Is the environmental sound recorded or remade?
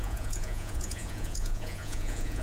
remade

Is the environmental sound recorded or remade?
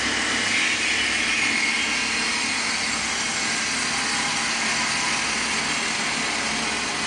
recorded